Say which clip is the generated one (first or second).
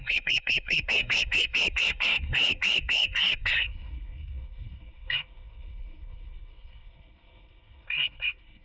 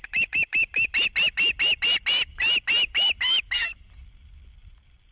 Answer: first